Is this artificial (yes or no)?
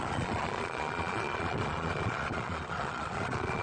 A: yes